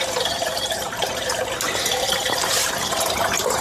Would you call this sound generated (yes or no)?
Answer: yes